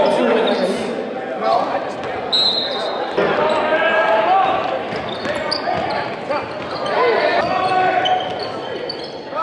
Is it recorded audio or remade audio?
recorded